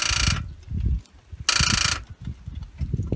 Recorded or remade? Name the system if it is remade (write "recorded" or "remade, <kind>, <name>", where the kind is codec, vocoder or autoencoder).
recorded